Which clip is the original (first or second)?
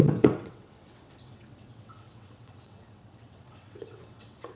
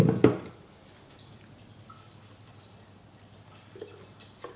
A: second